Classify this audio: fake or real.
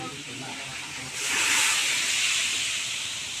real